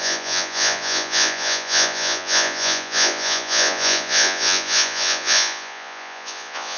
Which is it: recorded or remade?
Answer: remade